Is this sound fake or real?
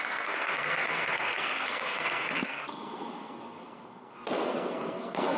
fake